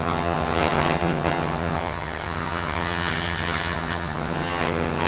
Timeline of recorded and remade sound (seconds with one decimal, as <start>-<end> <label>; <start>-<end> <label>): 0.0-5.1 remade